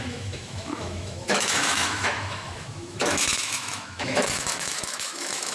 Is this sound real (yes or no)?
no